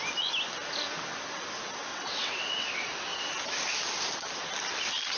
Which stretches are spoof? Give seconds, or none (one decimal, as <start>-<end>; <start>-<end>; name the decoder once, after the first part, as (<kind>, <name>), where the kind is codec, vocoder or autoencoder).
1.9-2.7 (vocoder, WaveNeXt)